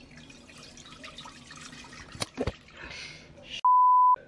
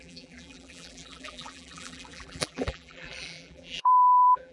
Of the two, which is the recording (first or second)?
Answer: first